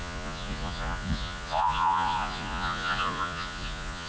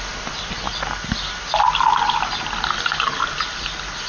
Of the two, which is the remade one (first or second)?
first